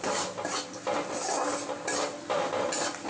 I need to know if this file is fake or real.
real